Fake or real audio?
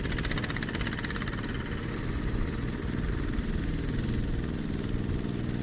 real